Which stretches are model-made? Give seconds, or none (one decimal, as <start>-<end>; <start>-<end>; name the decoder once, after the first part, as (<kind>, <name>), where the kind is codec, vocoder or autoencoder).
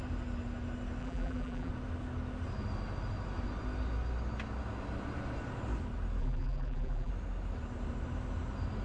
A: 1.0-1.7 (vocoder, BigVGAN v2); 6.2-7.1